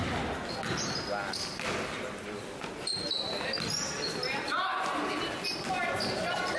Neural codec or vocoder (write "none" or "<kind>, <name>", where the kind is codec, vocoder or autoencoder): none